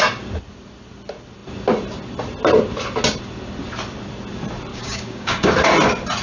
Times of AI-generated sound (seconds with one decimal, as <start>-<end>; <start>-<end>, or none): 4.7-5.5